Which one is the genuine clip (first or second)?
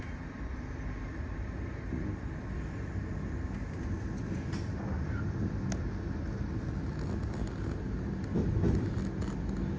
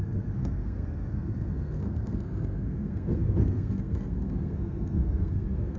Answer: first